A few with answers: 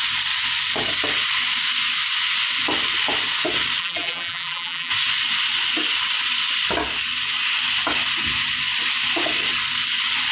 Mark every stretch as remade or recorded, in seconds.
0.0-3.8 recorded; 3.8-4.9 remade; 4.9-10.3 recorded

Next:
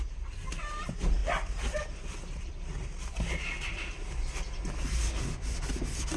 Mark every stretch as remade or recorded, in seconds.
0.0-1.2 recorded; 1.2-2.5 remade; 2.5-6.2 recorded

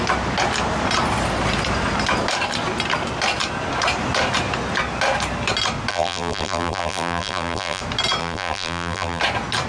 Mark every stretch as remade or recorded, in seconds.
0.0-5.9 recorded; 5.9-7.8 remade; 7.8-8.2 recorded; 8.2-9.2 remade; 9.2-9.7 recorded

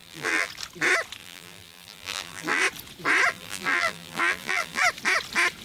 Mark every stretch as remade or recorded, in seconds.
0.0-0.5 remade; 0.5-1.2 recorded; 1.2-2.6 remade; 2.6-3.3 recorded; 3.3-4.8 remade; 4.8-5.6 recorded

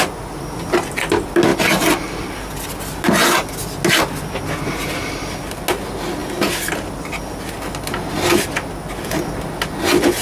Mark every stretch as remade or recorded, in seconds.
0.0-10.2 recorded

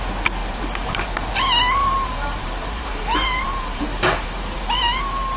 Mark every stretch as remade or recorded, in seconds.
0.0-0.4 recorded; 0.4-1.3 remade; 1.3-1.8 recorded; 1.8-5.0 remade; 5.0-5.4 recorded

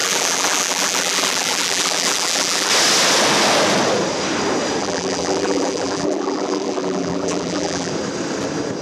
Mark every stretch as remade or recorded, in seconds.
0.0-2.7 remade; 2.7-4.8 recorded; 4.8-7.9 remade; 7.9-8.8 recorded

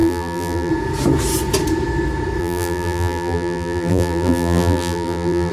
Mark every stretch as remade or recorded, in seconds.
0.0-0.7 remade; 0.7-2.4 recorded; 2.4-5.5 remade